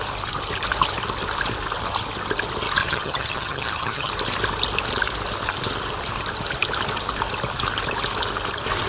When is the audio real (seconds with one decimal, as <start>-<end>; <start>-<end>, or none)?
0.0-2.8; 4.1-8.9